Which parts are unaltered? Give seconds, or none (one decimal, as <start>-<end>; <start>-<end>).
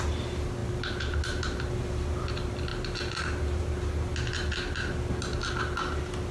0.0-6.3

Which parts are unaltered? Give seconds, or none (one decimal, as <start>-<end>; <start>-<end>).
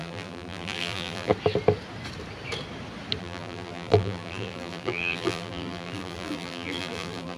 1.3-3.2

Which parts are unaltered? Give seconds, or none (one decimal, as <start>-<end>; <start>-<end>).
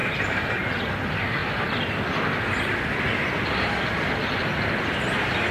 0.9-5.5